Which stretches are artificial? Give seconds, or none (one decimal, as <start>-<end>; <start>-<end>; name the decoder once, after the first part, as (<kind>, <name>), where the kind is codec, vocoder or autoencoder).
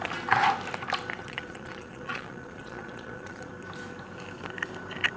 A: 1.2-3.5 (vocoder, Vocos)